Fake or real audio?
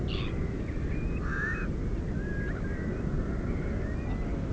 real